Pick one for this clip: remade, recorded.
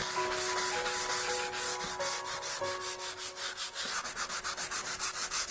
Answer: recorded